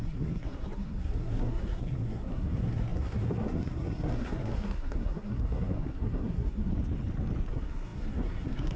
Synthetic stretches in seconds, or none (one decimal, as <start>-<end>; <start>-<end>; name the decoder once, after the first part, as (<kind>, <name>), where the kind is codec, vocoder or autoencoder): 0.0-6.7 (codec, SNAC); 7.5-8.8